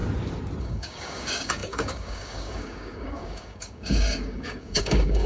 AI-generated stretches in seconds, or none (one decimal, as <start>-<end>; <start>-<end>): 0.6-5.3